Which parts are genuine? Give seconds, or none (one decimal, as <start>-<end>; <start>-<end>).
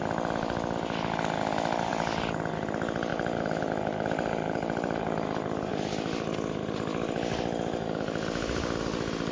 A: 0.0-3.1; 5.7-9.3